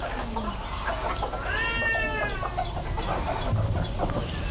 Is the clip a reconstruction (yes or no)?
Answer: no